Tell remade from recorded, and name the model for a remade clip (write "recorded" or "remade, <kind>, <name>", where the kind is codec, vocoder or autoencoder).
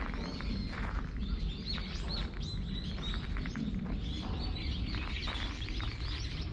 recorded